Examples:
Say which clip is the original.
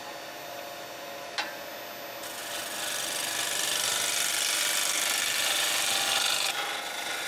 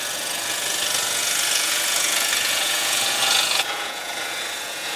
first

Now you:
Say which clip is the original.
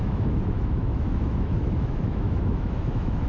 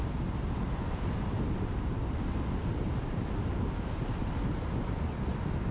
second